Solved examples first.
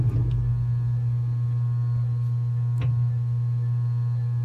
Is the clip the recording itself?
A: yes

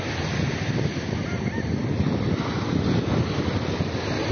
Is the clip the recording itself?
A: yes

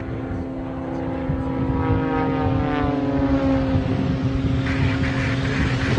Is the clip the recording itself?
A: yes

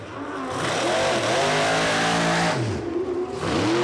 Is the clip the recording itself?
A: yes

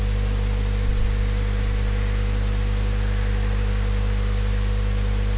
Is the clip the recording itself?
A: yes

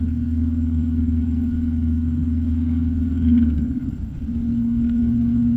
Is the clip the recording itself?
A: no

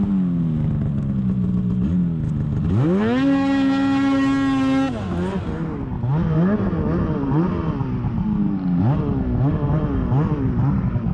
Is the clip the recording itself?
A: yes